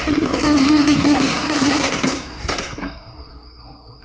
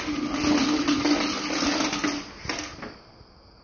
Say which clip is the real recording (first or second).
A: second